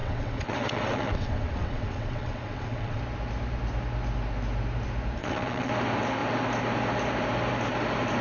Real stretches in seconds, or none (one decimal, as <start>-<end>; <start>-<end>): 3.0-5.2; 5.7-8.2